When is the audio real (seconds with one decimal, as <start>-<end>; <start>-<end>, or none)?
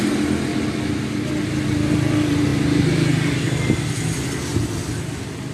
0.0-5.5